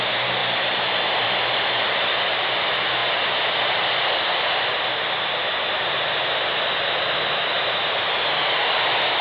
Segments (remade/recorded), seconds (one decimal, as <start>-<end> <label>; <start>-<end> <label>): 0.0-0.4 recorded; 0.4-2.5 remade; 2.5-8.4 recorded; 8.4-9.2 remade